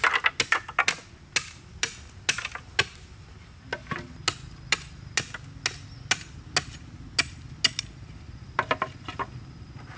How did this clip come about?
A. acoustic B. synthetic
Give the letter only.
A